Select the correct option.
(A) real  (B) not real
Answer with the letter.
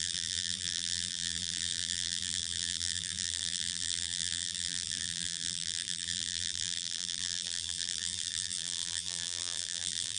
B